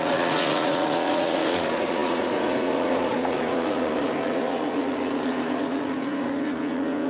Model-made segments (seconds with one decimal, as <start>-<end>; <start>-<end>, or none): 0.0-7.1